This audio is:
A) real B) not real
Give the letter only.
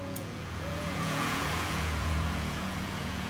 B